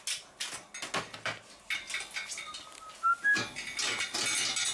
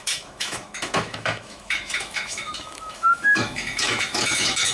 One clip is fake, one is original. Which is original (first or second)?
first